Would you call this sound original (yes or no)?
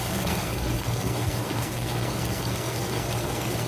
no